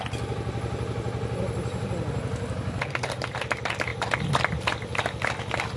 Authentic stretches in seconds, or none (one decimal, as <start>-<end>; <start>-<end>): 0.0-5.8